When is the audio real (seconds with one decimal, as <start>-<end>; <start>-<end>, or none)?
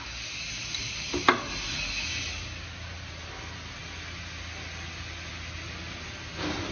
0.0-6.7